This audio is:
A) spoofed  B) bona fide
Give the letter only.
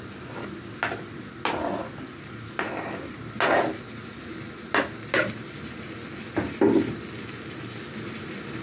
B